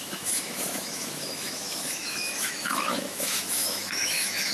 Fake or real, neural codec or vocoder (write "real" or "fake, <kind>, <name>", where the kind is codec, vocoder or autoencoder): fake, autoencoder, DAC-VAE